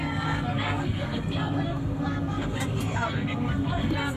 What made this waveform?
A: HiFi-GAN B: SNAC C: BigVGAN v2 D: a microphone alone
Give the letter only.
B